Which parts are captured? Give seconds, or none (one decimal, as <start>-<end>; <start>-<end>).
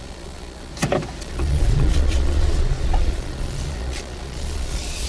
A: 0.7-1.2